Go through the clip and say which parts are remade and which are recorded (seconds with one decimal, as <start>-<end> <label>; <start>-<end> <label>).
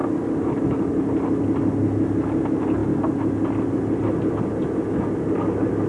0.0-0.6 remade; 0.6-5.9 recorded